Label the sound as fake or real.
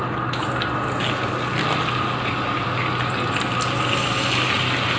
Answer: real